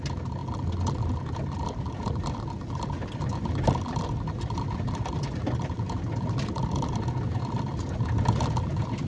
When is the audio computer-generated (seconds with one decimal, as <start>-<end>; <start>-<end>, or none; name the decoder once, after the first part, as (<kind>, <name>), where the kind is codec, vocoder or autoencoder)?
none